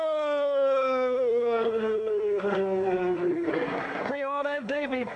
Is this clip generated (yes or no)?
yes